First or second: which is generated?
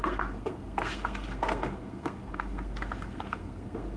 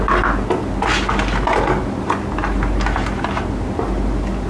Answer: first